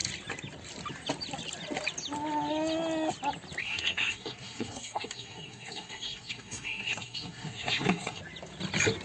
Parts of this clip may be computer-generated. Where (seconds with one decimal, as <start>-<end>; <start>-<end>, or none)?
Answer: 3.6-8.2